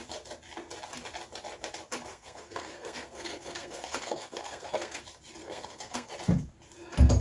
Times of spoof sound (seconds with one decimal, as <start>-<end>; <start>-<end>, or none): 2.1-5.0; 5.4-6.1